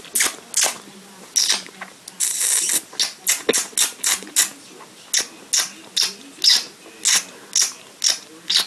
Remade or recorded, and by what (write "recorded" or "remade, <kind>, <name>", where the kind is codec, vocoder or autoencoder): recorded